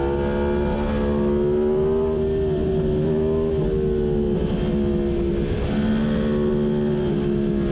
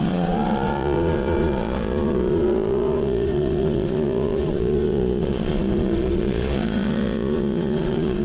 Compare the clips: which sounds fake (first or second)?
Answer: second